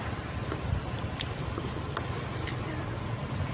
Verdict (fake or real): fake